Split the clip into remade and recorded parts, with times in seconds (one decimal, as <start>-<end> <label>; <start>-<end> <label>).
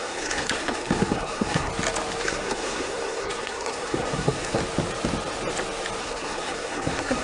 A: 0.0-1.7 remade; 1.7-2.2 recorded; 2.2-4.6 remade; 4.6-6.0 recorded; 6.0-7.2 remade